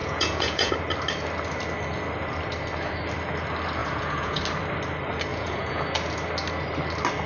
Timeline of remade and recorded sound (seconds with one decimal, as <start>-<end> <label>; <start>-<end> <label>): 0.0-0.7 remade; 0.7-3.8 recorded; 3.8-4.4 remade; 4.4-5.3 recorded; 5.3-5.8 remade; 5.8-7.3 recorded